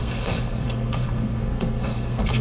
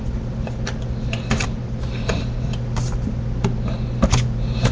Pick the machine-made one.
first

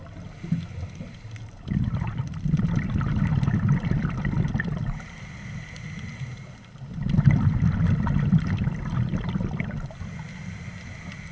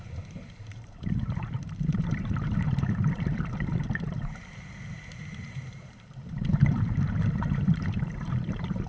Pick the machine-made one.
second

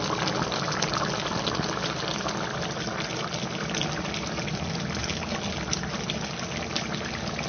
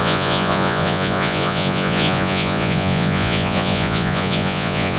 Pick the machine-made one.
second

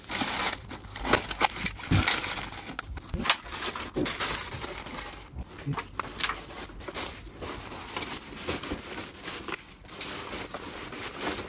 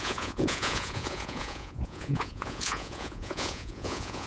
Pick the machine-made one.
second